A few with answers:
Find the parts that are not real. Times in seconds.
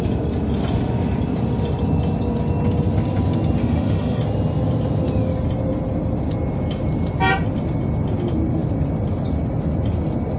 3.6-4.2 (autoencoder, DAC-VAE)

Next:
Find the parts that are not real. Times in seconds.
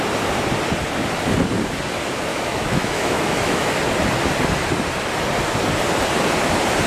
2.3-3.7 (autoencoder, DAC-VAE)